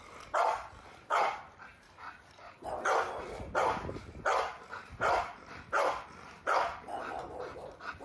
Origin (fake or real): real